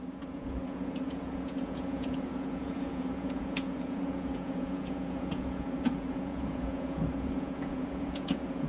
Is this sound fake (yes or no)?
yes